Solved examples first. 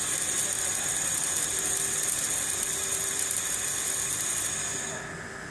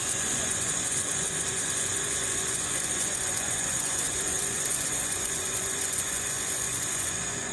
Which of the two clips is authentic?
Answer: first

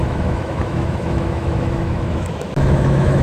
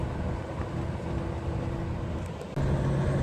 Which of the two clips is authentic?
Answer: second